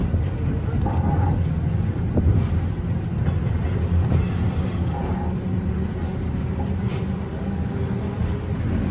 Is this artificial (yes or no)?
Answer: no